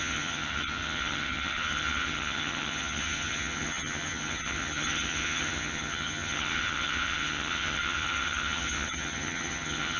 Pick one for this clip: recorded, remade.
remade